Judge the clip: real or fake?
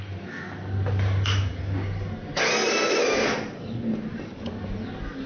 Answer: real